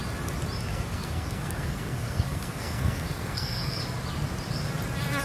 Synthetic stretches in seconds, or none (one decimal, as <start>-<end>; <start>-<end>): 0.7-3.8